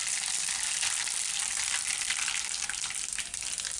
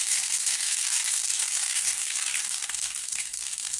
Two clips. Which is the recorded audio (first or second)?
first